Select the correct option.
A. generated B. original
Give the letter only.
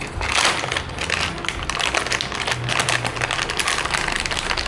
B